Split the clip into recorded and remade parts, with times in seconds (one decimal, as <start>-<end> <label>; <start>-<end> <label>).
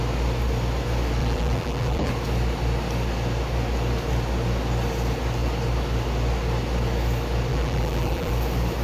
0.0-1.2 recorded; 1.2-2.1 remade; 2.1-7.5 recorded; 7.5-8.3 remade; 8.3-8.8 recorded